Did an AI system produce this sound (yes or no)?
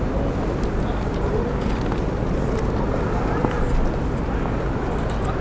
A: no